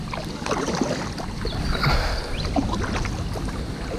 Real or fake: real